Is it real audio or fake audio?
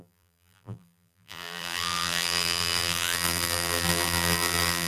fake